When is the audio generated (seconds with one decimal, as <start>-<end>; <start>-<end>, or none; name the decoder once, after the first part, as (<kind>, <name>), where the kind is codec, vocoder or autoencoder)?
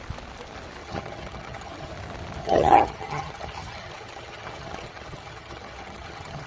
0.8-1.9 (vocoder, HiFi-GAN); 2.4-6.5